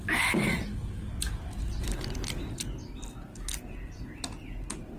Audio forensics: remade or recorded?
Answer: recorded